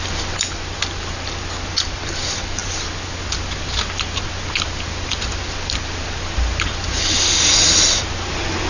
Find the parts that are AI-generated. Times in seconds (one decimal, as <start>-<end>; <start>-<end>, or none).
none